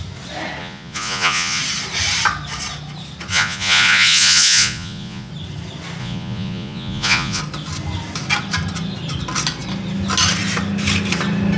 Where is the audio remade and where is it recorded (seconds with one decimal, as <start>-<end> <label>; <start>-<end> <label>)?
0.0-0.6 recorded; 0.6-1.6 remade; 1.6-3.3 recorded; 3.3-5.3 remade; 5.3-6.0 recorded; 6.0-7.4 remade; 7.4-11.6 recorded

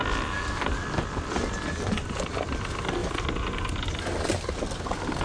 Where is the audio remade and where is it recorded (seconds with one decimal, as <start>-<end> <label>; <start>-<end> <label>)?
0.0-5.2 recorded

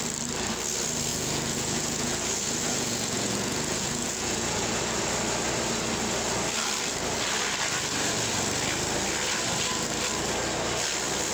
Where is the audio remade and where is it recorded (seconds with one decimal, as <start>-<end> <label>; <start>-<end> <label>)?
0.0-1.1 recorded; 1.1-4.8 remade; 4.8-11.3 recorded

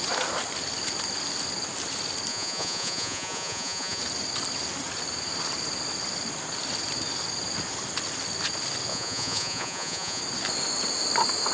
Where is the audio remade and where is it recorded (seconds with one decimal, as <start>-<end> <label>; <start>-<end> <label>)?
0.0-2.3 recorded; 2.3-4.0 remade; 4.0-8.9 recorded; 8.9-10.2 remade; 10.2-11.5 recorded